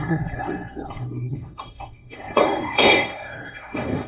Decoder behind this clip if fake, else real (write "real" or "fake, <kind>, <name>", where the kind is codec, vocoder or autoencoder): fake, codec, SNAC